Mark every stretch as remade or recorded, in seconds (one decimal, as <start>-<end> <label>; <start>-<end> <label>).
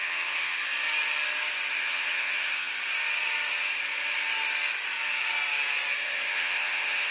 0.0-0.6 remade; 0.6-1.7 recorded; 1.7-2.7 remade; 2.7-6.0 recorded; 6.0-7.1 remade